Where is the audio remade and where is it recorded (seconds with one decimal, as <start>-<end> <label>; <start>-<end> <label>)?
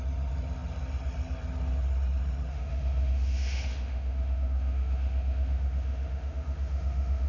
0.0-2.5 recorded; 2.5-7.3 remade